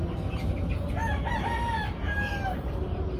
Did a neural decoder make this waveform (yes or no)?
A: no